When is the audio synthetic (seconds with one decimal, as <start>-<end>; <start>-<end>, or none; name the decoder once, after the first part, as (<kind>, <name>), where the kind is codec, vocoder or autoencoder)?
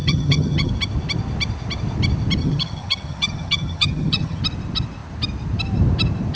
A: 0.0-0.7 (vocoder, HiFi-GAN); 2.4-4.4